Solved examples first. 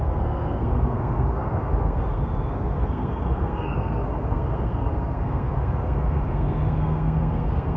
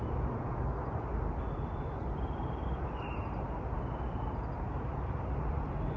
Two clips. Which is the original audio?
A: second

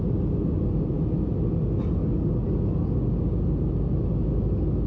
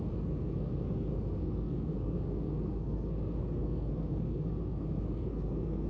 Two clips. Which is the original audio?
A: first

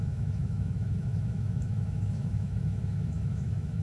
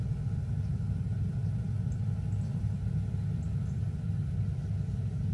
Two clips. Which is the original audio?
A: second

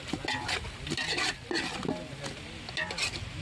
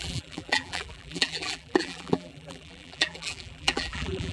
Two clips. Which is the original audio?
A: first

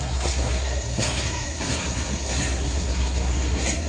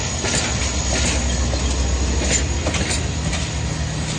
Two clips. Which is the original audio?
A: second